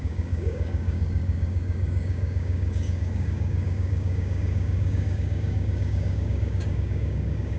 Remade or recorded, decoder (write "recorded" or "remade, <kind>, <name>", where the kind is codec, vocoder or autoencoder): remade, codec, DAC